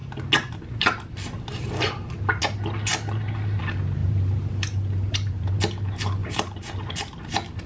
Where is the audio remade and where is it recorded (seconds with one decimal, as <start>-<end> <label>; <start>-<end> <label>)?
0.0-4.0 recorded; 4.0-5.5 remade; 5.5-6.2 recorded; 6.2-7.3 remade; 7.3-7.7 recorded